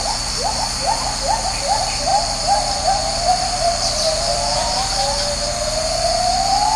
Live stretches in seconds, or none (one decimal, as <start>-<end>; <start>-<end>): none